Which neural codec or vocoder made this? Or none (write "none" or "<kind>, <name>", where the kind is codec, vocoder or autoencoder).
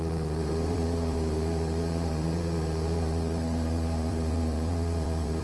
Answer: vocoder, Vocos